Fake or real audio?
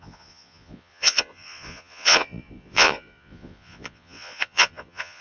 fake